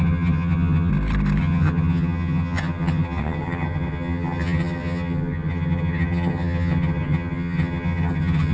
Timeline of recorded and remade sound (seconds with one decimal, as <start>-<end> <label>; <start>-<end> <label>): 0.0-0.9 remade; 0.9-1.4 recorded; 1.4-8.5 remade